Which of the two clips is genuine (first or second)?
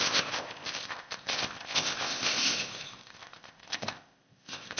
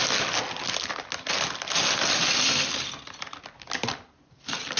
second